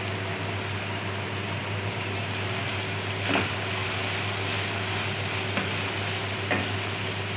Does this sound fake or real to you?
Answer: real